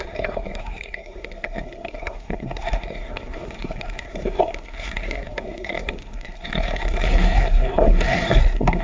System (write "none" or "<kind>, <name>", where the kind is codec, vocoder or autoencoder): codec, SNAC